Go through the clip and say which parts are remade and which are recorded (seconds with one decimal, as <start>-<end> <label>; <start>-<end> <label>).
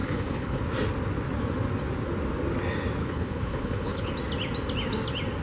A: 0.0-0.6 remade; 0.6-3.0 recorded; 3.0-4.1 remade; 4.1-5.4 recorded